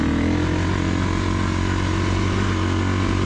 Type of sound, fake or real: real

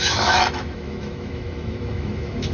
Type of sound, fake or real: fake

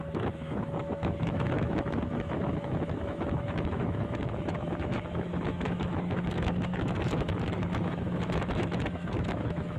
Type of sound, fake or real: fake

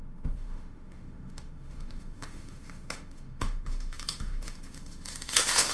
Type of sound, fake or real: fake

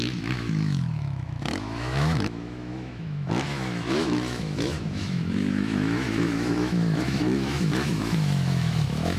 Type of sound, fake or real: fake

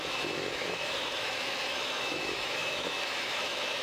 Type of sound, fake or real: fake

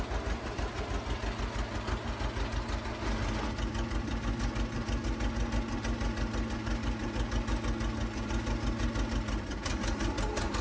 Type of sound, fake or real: real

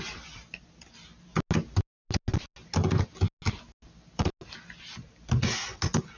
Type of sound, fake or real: real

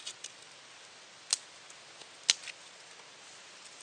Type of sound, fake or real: real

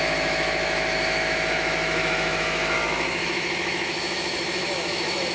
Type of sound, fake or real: fake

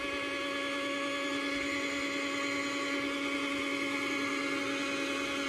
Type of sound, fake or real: real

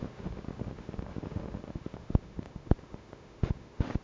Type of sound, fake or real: fake